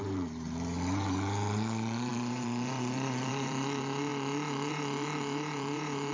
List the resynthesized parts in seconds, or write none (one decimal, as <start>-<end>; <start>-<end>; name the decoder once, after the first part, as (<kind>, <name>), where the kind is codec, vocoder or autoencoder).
0.0-6.1 (vocoder, BigVGAN v2)